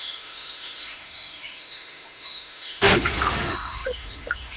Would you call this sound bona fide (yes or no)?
no